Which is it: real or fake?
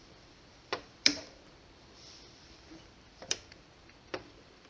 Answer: fake